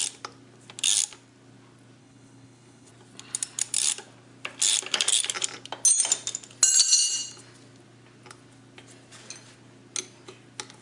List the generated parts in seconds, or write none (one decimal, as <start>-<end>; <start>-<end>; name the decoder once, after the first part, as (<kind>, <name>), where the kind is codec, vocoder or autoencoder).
2.0-2.9 (codec, HILCodec)